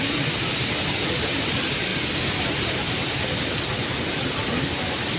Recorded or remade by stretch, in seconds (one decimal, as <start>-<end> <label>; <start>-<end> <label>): 0.0-5.2 recorded